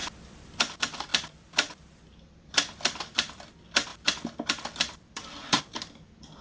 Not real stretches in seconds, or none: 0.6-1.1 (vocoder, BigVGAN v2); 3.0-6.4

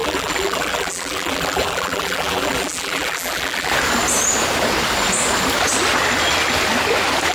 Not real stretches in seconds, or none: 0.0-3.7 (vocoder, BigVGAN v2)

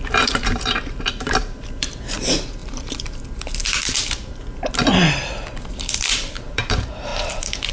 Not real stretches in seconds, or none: 0.0-4.9 (vocoder, BigVGAN v2); 5.7-7.7

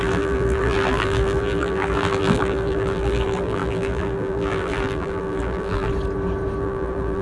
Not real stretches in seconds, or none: 0.0-5.9 (vocoder, BigVGAN v2); 6.6-7.2